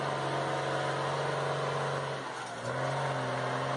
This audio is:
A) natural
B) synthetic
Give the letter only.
A